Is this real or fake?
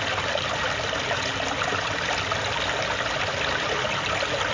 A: real